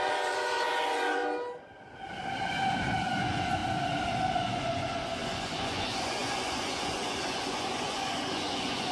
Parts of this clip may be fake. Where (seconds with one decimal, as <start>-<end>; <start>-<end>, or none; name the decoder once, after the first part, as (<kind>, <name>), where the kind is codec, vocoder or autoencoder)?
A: 0.0-1.2 (vocoder, Vocos); 2.4-3.6; 4.3-8.9